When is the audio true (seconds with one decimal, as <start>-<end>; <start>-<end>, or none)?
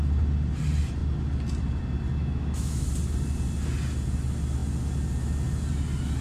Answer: 0.0-2.2; 2.9-6.2